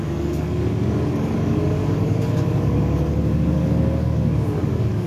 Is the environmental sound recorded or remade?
remade